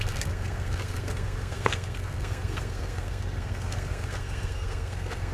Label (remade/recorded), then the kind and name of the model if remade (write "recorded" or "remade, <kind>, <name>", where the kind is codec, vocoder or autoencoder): remade, codec, SNAC